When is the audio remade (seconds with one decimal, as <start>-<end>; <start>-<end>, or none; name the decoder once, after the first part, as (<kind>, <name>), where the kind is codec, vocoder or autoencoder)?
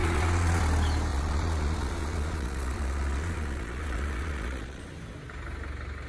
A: 0.0-0.6 (vocoder, Vocos); 1.1-4.8